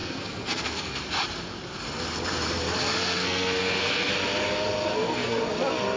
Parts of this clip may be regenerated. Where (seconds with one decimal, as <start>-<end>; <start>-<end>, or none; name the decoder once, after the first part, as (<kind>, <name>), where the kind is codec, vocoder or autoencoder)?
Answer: 0.0-1.0 (codec, SNAC); 2.9-4.1; 4.9-5.4

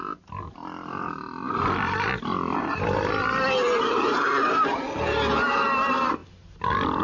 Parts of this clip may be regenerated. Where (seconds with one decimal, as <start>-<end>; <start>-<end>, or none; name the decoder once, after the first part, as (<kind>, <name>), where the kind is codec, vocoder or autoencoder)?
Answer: none